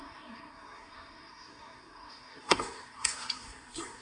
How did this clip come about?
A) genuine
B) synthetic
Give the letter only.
B